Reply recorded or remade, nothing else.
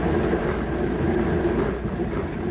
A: recorded